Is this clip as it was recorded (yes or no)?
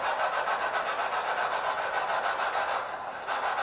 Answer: yes